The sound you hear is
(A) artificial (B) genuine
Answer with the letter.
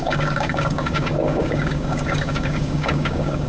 A